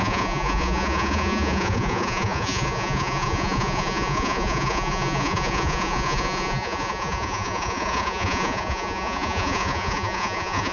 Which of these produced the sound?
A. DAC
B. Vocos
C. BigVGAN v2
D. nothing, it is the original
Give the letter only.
B